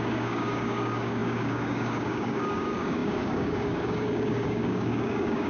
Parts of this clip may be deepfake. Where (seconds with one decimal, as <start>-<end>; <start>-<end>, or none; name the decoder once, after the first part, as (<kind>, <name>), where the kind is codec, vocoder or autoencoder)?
0.0-5.5 (codec, DAC)